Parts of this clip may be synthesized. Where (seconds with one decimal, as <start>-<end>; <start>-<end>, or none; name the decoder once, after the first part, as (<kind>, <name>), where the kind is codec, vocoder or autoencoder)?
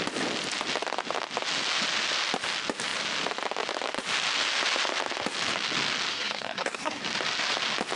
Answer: 6.1-7.0 (codec, SNAC)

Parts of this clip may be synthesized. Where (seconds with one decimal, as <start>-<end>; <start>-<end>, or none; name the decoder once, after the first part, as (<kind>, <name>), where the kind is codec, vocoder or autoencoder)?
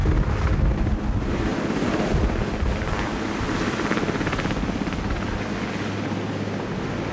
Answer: none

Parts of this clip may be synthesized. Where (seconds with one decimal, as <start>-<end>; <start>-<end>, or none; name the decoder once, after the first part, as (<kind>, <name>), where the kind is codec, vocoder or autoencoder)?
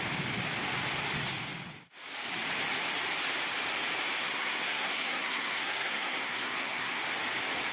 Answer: 4.2-7.0 (codec, SNAC)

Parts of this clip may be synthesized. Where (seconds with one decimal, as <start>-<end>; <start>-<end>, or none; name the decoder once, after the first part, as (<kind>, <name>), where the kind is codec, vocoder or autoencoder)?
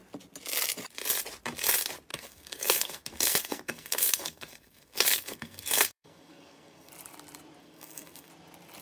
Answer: 2.1-6.9 (codec, SNAC); 7.6-8.3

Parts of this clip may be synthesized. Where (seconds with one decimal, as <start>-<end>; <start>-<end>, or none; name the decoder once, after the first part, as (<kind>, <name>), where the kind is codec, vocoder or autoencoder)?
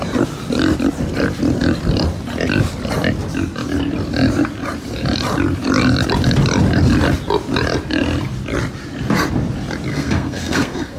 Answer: 9.9-11.0 (codec, SNAC)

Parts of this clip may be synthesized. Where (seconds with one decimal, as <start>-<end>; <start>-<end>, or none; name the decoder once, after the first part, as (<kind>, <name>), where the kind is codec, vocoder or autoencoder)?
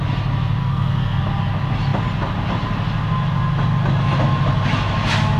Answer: 0.6-1.2 (codec, SNAC)